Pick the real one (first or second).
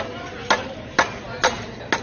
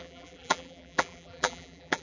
first